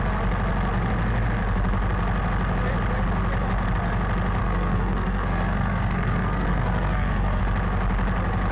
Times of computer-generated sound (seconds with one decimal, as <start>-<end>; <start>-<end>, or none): 4.4-7.4

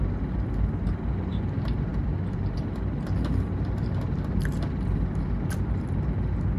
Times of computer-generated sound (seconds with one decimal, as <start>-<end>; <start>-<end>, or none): none